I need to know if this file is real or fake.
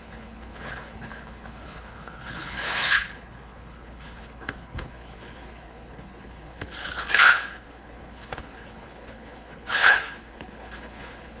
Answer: fake